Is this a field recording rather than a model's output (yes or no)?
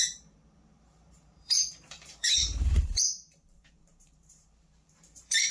no